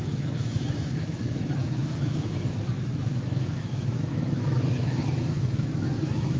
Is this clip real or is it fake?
fake